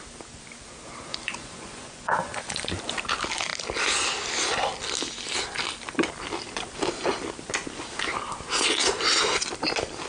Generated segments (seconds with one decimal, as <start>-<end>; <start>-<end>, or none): 1.1-2.7